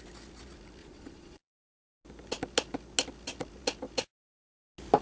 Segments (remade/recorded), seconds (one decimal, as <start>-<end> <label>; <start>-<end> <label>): 0.0-0.8 recorded; 0.8-1.5 remade; 1.5-5.0 recorded